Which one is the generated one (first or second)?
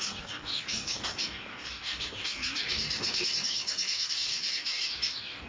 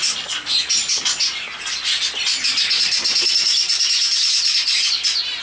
first